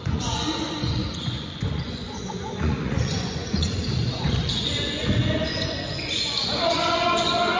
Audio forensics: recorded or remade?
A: remade